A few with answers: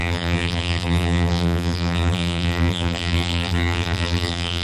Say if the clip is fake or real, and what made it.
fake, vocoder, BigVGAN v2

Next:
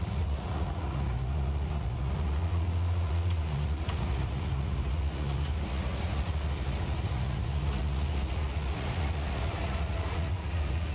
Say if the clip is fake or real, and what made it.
fake, vocoder, Vocos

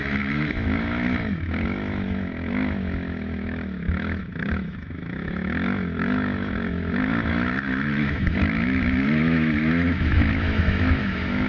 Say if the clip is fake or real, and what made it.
fake, autoencoder, DAC-VAE